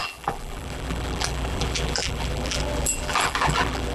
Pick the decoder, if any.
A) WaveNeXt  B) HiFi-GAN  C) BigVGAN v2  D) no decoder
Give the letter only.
C